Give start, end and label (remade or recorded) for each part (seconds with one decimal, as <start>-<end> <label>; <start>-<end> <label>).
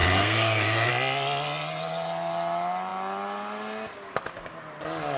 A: 0.0-0.9 remade; 0.9-5.2 recorded